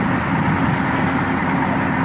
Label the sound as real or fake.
real